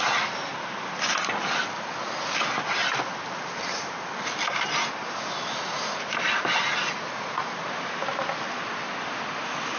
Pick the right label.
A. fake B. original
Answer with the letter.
B